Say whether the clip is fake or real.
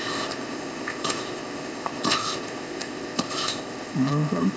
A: fake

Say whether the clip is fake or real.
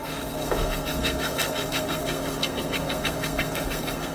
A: fake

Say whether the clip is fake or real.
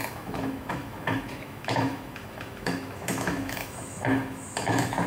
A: fake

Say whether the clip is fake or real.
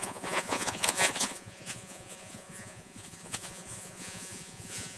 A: fake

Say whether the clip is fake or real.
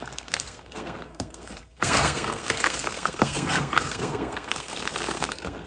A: fake